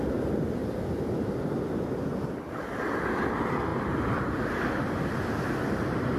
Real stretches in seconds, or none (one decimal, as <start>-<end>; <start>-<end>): 0.0-6.2